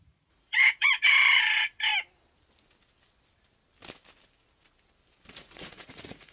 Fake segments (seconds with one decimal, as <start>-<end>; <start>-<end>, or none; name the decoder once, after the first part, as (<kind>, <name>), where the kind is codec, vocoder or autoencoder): 0.0-1.9 (vocoder, Vocos); 5.3-6.3